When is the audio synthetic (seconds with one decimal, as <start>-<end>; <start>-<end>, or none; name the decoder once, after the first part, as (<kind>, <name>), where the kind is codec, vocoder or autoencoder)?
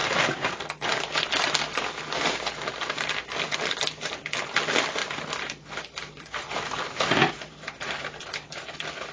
5.0-9.1 (vocoder, BigVGAN v2)